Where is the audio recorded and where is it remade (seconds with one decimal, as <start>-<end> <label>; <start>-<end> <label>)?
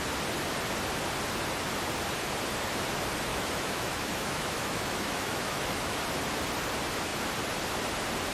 0.0-3.3 recorded; 3.3-6.0 remade; 6.0-8.3 recorded